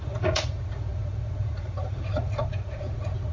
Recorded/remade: remade